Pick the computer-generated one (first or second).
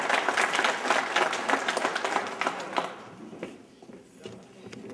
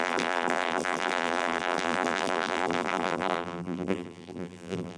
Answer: second